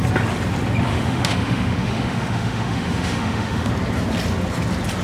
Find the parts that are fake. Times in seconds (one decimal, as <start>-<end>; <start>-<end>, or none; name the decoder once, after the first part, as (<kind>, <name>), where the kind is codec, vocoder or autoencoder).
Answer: 0.9-3.7 (autoencoder, DAC-VAE)